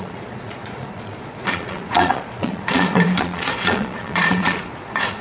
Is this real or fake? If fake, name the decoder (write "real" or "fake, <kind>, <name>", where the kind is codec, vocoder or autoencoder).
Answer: fake, vocoder, Vocos